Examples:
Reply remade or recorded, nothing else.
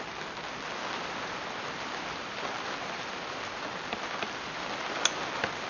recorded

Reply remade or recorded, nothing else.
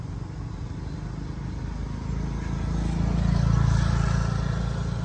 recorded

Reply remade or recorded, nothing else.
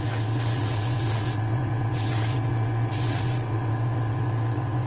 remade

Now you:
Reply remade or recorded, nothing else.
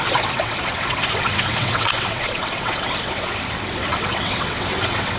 remade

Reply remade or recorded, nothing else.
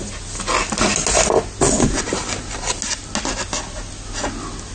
recorded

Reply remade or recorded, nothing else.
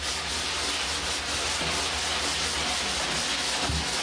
recorded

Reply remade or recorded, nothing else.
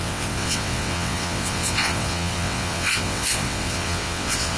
remade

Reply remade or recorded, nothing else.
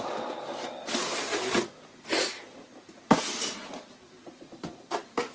recorded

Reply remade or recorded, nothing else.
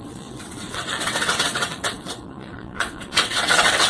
remade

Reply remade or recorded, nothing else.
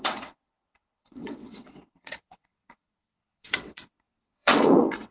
remade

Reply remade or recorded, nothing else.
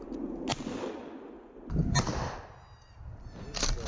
recorded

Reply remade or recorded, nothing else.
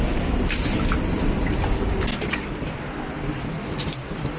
recorded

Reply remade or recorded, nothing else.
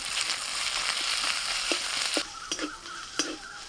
recorded